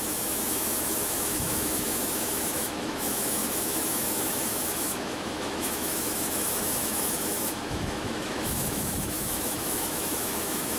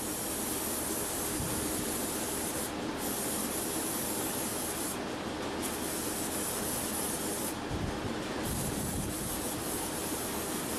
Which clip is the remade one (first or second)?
first